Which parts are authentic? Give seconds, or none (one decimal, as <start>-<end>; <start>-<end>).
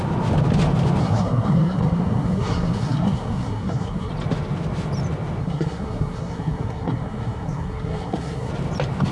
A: 0.0-1.0; 4.1-5.4; 8.5-9.1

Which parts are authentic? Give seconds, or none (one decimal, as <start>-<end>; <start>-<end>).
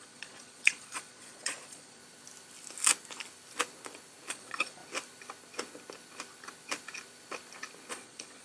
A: 2.0-4.3; 4.8-7.9